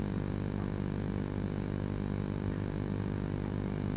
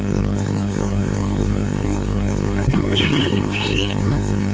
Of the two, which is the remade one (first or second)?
second